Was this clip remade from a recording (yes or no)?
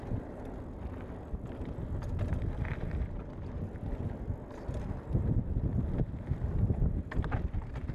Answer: no